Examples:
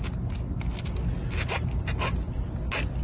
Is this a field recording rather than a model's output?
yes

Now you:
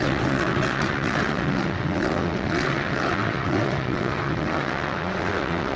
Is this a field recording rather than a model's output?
no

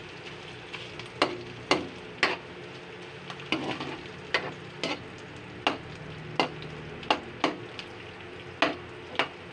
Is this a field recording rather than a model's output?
yes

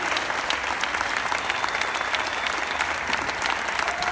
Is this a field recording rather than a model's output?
yes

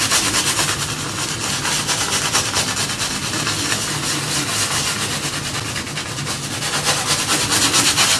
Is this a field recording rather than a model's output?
yes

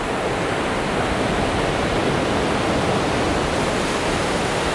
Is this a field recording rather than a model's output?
yes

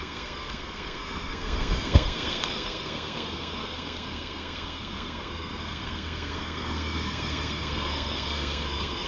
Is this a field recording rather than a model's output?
no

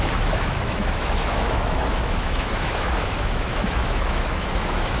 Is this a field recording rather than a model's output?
no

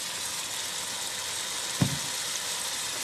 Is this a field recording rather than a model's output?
yes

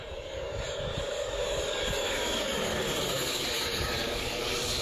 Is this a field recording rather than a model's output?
no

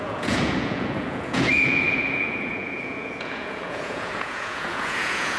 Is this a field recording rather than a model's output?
no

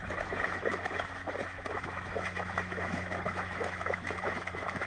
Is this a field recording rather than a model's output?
no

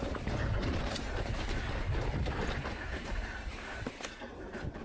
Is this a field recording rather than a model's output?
no